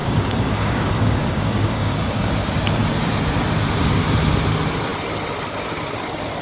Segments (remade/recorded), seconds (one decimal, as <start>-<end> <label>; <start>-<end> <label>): 0.0-2.3 remade; 2.3-6.4 recorded